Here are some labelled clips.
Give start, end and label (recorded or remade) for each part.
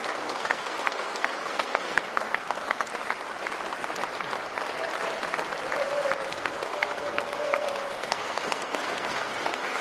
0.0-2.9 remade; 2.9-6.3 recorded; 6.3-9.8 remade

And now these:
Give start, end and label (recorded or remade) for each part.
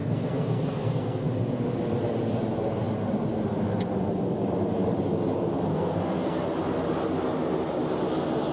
0.0-1.3 remade; 1.3-5.7 recorded; 5.7-6.4 remade; 6.4-8.5 recorded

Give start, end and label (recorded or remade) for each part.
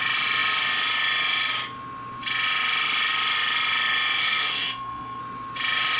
0.0-4.2 recorded; 4.2-5.2 remade; 5.2-6.0 recorded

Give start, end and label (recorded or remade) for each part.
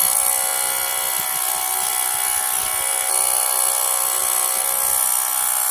0.0-5.7 recorded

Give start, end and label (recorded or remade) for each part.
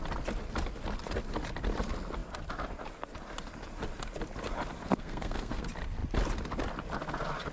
0.0-4.8 recorded; 4.8-5.6 remade; 5.6-7.5 recorded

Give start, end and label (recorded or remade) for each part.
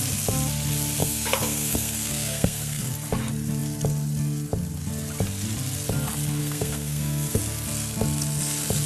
0.0-1.0 recorded; 1.0-2.9 remade; 2.9-6.4 recorded; 6.4-7.4 remade; 7.4-8.9 recorded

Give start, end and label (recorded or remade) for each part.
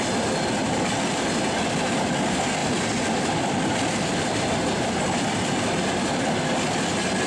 0.0-7.3 recorded